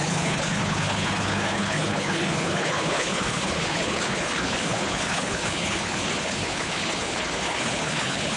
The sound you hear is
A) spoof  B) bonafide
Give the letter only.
A